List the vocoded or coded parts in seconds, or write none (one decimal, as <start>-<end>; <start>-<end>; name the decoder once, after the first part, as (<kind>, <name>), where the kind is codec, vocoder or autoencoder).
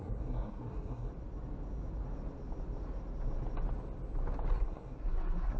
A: 0.0-1.1 (codec, SNAC); 4.5-5.6